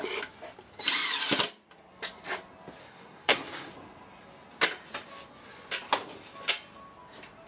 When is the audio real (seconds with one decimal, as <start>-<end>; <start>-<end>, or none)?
0.0-2.8; 3.7-7.5